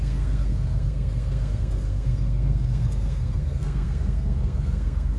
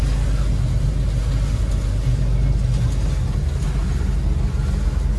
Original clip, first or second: second